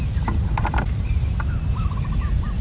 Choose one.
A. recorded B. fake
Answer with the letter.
A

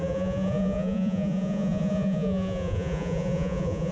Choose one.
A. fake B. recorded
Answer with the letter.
A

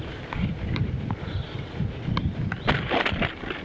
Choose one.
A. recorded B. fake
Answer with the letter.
A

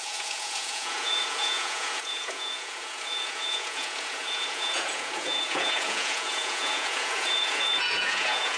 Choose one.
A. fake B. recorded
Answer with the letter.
A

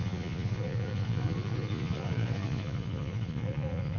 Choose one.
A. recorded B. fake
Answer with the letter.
B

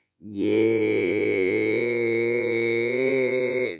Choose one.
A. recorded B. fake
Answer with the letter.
B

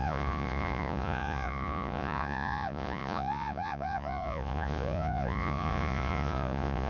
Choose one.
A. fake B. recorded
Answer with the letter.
A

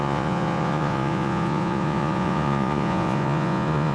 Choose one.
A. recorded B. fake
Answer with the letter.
B